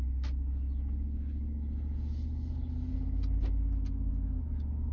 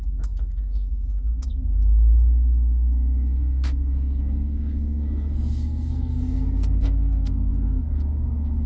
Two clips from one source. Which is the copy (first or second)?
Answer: second